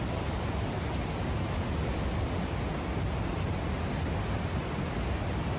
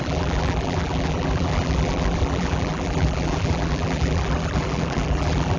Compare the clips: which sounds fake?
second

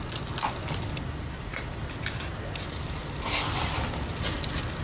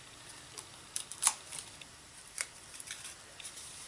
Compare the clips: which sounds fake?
second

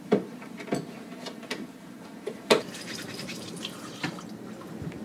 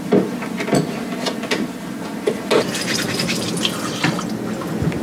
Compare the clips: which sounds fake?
first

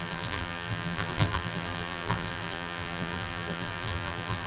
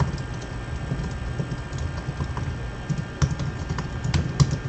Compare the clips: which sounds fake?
first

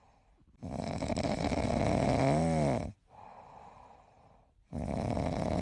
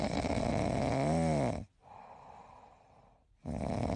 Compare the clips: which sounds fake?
first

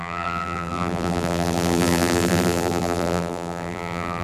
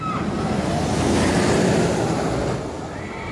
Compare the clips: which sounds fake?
first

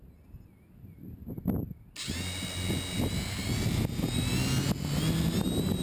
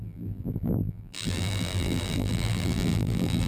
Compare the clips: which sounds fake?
second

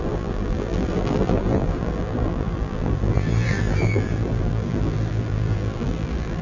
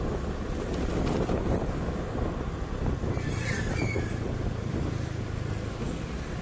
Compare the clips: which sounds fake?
first